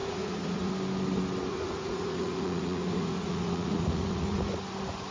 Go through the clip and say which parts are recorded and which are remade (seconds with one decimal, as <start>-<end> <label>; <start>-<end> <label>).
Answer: 0.0-0.7 remade; 0.7-1.5 recorded; 1.5-4.6 remade; 4.6-5.1 recorded